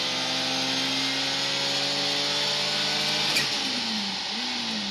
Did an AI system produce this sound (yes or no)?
no